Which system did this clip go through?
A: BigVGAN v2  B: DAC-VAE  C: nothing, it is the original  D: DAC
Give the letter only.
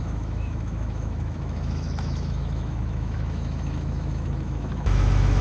B